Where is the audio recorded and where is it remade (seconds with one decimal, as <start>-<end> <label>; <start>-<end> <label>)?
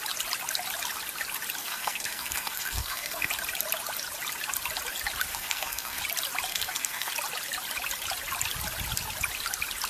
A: 0.0-1.6 recorded; 1.6-3.3 remade; 3.3-5.3 recorded; 5.3-6.0 remade; 6.0-6.5 recorded; 6.5-7.1 remade; 7.1-9.9 recorded